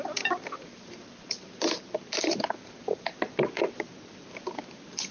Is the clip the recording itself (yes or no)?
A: yes